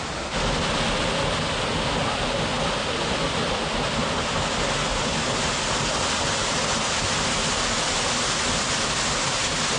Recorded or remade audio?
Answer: recorded